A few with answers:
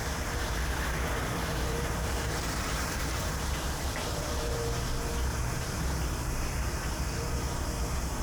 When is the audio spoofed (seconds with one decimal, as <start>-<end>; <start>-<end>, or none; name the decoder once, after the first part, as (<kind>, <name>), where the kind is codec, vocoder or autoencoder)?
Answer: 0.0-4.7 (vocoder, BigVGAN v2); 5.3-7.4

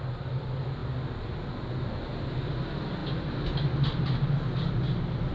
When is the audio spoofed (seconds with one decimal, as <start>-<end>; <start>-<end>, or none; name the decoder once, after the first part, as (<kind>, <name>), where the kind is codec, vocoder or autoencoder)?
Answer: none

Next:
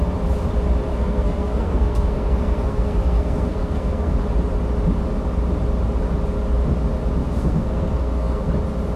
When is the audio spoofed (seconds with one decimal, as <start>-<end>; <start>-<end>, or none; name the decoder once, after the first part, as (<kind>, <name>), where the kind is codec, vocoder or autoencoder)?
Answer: 0.9-4.1 (codec, SNAC); 7.2-8.5

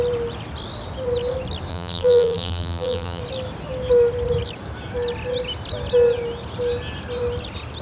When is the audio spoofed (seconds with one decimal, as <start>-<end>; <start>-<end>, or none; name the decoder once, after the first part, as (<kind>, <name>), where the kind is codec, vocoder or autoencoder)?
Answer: 1.7-3.2 (vocoder, BigVGAN v2)